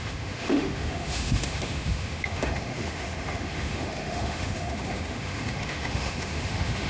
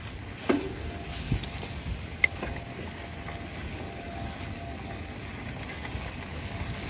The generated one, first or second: first